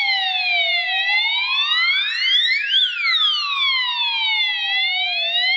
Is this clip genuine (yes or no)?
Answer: yes